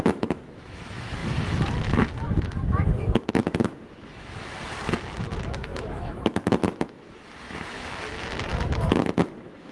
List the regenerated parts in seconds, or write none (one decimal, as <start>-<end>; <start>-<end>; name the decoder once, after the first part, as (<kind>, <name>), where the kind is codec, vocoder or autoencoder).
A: 0.0-9.7 (autoencoder, DAC-VAE)